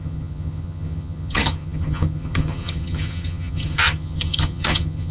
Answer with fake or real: fake